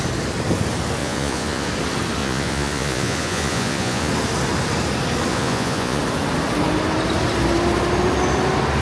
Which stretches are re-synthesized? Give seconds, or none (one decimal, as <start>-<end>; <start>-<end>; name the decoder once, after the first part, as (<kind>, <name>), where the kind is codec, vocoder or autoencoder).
1.0-1.7 (vocoder, Vocos); 2.2-4.1; 5.3-6.0